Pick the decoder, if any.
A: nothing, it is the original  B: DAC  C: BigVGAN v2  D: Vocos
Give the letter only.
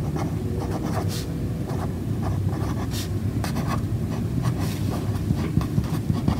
A